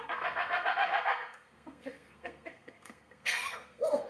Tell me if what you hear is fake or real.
fake